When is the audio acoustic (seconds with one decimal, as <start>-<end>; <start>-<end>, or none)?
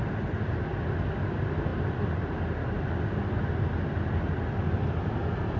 0.0-5.6